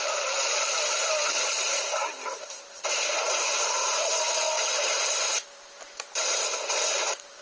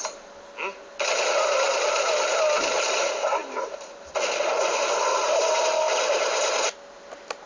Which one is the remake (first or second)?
first